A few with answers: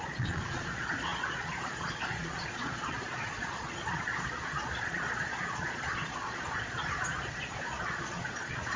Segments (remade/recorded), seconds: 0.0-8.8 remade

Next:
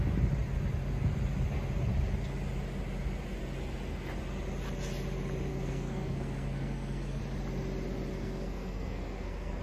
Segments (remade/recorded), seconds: 0.0-5.5 recorded; 5.5-7.2 remade; 7.2-8.1 recorded; 8.1-9.6 remade

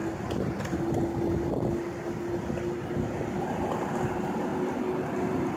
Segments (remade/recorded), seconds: 0.0-5.6 recorded

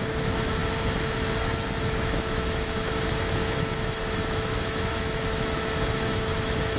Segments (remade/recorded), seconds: 0.0-0.6 remade; 0.6-1.8 recorded; 1.8-6.8 remade

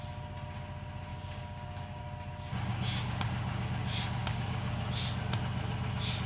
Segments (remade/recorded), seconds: 0.0-1.1 recorded; 1.1-2.0 remade; 2.0-2.7 recorded; 2.7-3.2 remade; 3.2-4.2 recorded; 4.2-4.8 remade; 4.8-6.3 recorded

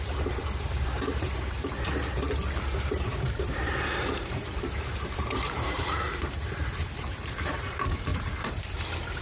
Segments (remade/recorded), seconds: 0.0-9.2 remade